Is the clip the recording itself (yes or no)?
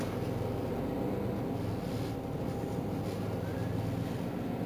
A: yes